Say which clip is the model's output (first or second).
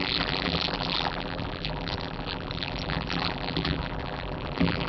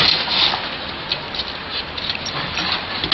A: first